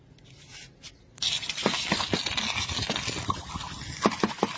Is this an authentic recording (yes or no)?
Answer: yes